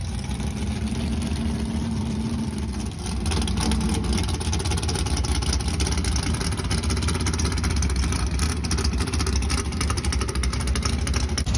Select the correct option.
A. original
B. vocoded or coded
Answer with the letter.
A